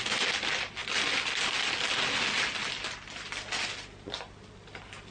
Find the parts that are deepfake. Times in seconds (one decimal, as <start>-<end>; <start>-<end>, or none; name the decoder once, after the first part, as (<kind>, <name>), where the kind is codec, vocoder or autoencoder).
none